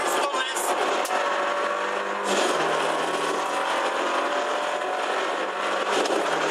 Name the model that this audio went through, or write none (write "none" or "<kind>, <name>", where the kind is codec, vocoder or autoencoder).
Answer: none